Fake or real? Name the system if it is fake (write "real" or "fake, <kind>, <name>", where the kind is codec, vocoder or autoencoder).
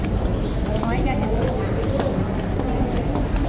real